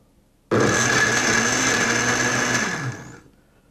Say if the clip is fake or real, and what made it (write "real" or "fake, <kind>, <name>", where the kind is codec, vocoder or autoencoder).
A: real